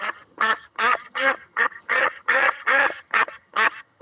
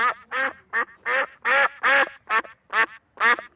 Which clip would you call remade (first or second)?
first